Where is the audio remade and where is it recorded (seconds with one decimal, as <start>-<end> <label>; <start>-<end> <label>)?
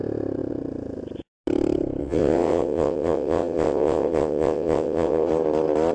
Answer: 0.0-2.0 recorded; 2.0-5.3 remade; 5.3-5.9 recorded